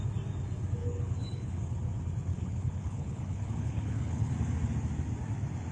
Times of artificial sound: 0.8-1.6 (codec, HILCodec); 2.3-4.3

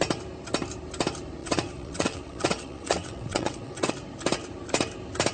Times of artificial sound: 1.4-3.9 (vocoder, WaveNeXt)

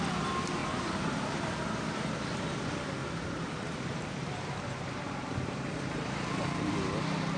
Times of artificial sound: 0.6-2.3 (vocoder, BigVGAN v2); 3.0-6.7